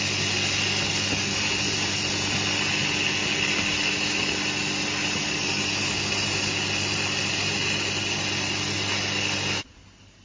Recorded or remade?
recorded